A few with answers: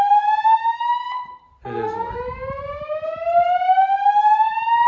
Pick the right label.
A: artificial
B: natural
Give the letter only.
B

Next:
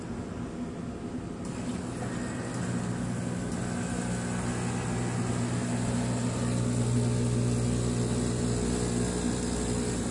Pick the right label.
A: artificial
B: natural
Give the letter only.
B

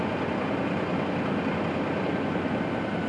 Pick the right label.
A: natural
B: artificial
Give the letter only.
A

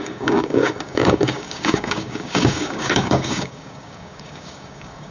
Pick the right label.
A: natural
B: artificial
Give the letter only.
B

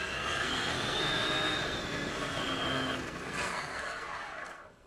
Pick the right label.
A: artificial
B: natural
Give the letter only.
A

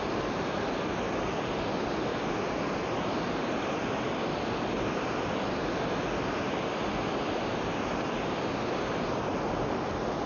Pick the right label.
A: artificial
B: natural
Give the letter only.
B